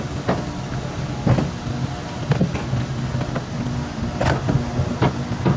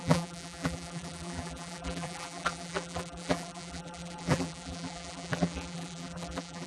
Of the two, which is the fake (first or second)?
second